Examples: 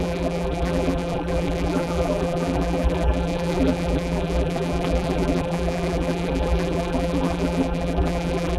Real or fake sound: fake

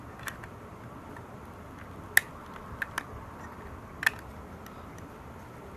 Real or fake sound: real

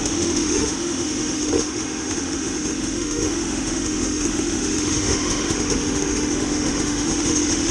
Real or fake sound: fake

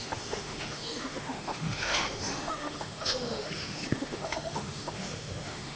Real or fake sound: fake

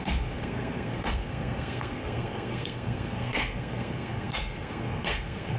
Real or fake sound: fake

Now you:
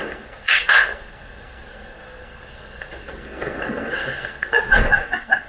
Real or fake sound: fake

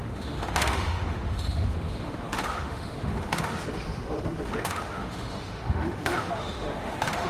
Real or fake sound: fake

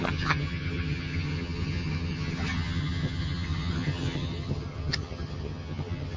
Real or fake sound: fake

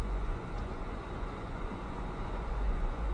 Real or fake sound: fake